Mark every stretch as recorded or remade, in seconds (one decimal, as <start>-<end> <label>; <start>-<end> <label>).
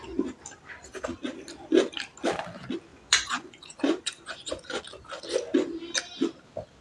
0.0-2.9 recorded; 2.9-4.8 remade; 4.8-6.8 recorded